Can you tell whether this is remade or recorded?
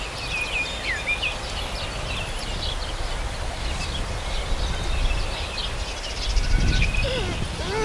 recorded